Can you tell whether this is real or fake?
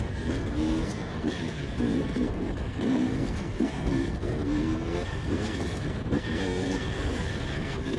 fake